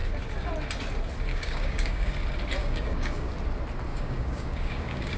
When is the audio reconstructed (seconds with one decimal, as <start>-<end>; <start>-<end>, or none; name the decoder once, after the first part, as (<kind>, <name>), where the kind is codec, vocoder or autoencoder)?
1.3-2.1 (codec, DAC); 2.6-3.3; 3.9-5.2

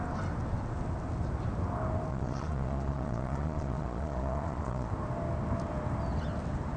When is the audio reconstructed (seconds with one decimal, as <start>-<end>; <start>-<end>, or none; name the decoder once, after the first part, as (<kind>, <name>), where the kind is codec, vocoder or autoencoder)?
2.1-4.9 (vocoder, Vocos)